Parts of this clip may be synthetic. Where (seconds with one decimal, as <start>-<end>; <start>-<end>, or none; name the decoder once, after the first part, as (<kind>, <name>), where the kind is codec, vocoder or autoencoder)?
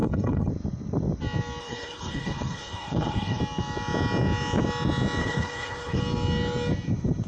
0.0-0.5 (codec, HILCodec); 1.6-3.4; 5.2-6.0